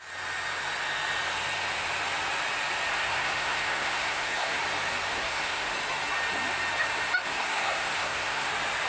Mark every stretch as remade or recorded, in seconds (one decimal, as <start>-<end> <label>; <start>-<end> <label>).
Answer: 0.0-2.9 recorded; 2.9-4.6 remade; 4.6-5.1 recorded; 5.1-5.7 remade; 5.7-7.3 recorded; 7.3-8.5 remade; 8.5-8.9 recorded